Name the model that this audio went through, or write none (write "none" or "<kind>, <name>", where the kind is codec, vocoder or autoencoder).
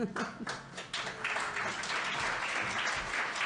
none